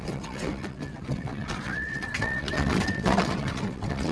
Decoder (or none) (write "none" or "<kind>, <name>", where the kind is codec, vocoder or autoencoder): vocoder, WaveNeXt